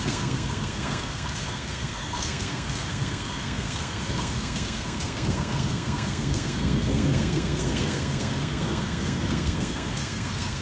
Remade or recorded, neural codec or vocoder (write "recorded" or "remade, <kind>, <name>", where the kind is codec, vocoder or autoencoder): remade, codec, SNAC